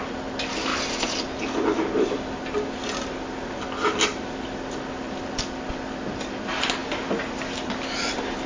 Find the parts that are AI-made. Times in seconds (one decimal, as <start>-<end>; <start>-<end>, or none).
none